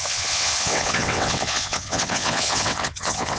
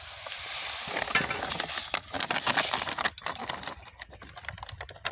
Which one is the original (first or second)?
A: second